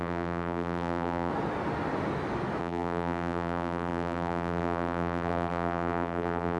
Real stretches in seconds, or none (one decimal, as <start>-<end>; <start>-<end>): 1.3-2.6